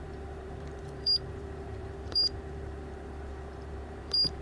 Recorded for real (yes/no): no